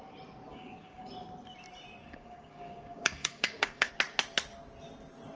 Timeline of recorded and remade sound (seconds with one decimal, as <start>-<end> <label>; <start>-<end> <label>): 0.0-0.5 recorded; 0.5-1.1 remade; 1.1-2.0 recorded; 2.0-3.9 remade; 3.9-5.3 recorded